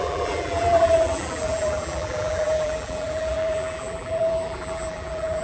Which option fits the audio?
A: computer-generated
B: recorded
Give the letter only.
A